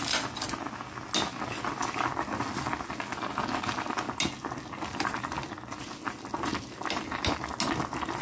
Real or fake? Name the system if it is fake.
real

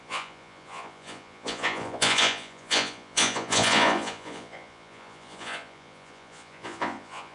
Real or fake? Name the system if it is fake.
fake, vocoder, Vocos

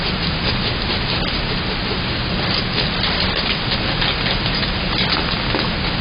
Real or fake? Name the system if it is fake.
real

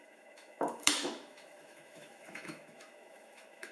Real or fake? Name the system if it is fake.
fake, autoencoder, DAC-VAE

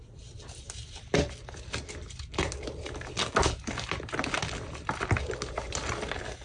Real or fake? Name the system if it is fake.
real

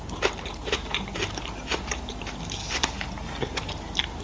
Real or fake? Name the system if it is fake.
fake, vocoder, BigVGAN v2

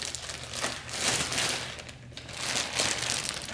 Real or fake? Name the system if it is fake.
real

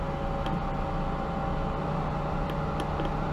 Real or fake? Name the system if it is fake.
real